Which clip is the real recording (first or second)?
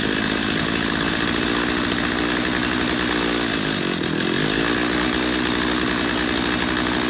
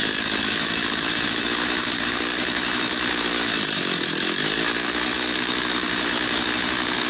first